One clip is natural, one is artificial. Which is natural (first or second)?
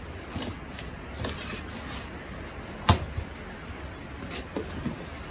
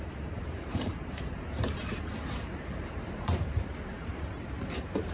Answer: first